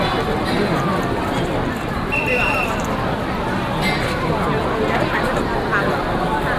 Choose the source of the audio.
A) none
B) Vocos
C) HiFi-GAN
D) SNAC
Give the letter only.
A